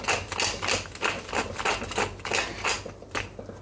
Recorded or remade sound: recorded